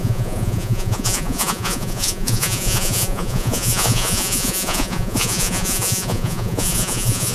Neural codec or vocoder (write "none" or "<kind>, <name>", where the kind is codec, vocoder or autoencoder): vocoder, Vocos